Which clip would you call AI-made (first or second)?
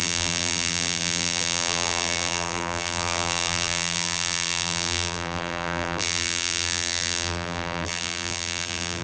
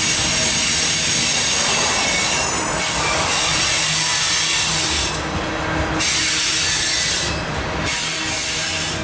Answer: first